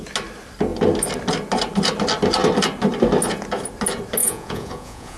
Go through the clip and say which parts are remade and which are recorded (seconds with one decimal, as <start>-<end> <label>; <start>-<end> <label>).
0.0-4.2 recorded; 4.2-5.2 remade